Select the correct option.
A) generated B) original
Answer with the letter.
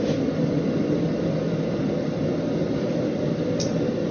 B